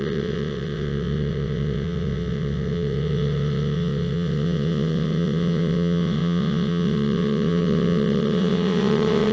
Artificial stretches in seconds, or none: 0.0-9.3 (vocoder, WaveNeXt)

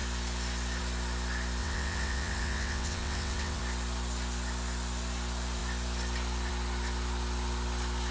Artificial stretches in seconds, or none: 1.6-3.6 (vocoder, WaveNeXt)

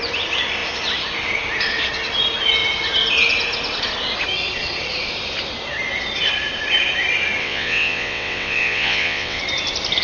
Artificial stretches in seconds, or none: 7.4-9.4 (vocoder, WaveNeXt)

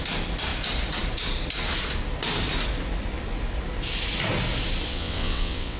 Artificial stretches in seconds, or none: 4.9-5.8 (vocoder, WaveNeXt)

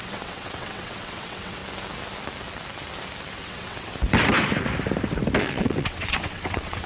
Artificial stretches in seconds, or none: 0.0-1.6 (vocoder, WaveNeXt); 3.3-3.9; 5.4-6.9

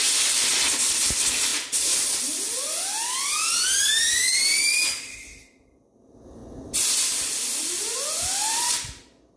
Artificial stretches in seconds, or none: none

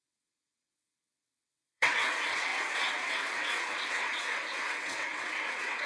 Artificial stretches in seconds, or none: 0.0-5.9 (vocoder, WaveNeXt)